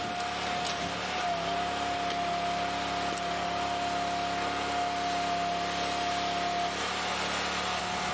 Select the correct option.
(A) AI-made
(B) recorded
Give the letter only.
B